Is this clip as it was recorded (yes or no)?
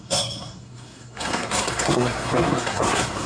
no